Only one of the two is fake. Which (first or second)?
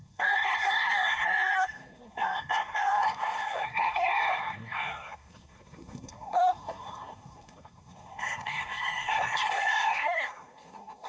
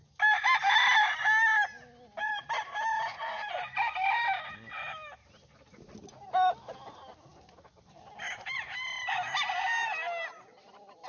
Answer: first